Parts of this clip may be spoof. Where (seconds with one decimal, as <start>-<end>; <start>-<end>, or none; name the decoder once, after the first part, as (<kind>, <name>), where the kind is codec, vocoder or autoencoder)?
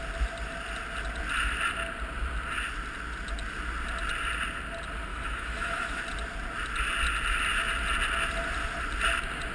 5.1-6.0 (autoencoder, DAC-VAE)